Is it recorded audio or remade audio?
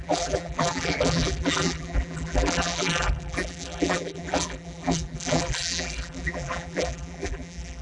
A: remade